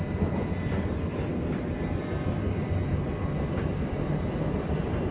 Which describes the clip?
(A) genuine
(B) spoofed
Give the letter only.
B